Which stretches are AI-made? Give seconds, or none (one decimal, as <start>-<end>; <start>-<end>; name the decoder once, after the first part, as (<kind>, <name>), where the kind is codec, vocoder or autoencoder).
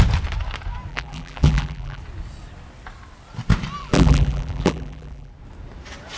0.9-2.0 (vocoder, BigVGAN v2); 3.8-5.3